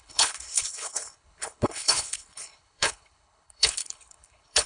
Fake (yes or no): yes